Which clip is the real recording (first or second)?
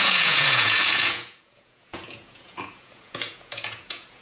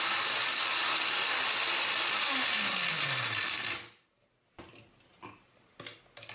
second